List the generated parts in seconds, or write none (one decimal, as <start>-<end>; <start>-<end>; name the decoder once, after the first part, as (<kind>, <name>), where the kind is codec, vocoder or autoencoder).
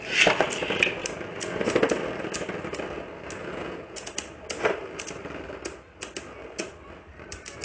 3.4-4.1 (vocoder, Vocos)